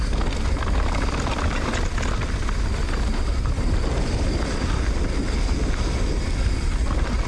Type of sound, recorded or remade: recorded